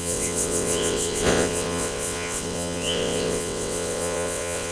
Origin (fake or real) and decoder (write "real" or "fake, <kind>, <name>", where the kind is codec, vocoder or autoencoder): fake, vocoder, WaveNeXt